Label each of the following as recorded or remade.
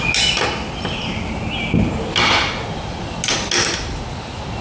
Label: recorded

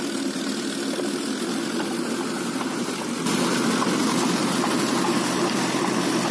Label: recorded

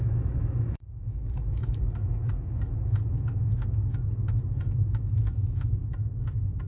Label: remade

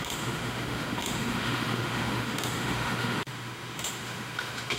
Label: remade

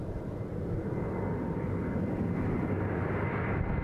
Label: recorded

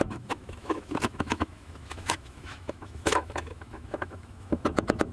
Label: remade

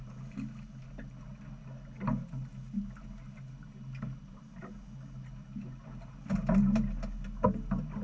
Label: recorded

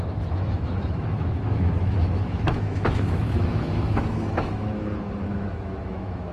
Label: remade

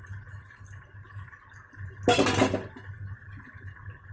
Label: recorded